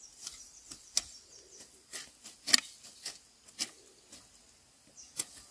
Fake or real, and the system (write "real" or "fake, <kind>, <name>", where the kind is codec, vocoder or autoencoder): real